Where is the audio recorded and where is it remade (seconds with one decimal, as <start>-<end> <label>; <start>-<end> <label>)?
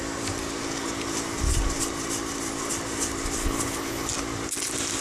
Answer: 0.0-3.4 recorded; 3.4-4.1 remade; 4.1-5.0 recorded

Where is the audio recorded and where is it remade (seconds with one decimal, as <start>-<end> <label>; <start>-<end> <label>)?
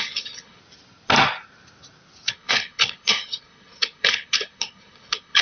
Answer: 0.0-0.6 remade; 0.6-2.3 recorded; 2.3-5.4 remade